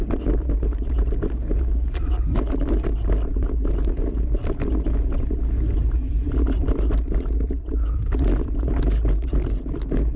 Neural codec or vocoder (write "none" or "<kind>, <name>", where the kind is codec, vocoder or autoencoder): none